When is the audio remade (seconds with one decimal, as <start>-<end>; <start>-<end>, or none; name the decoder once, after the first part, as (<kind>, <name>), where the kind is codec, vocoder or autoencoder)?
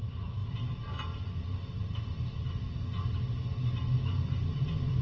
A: none